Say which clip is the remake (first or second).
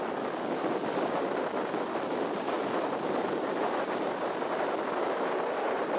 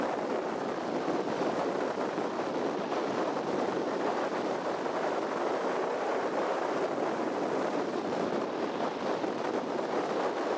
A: second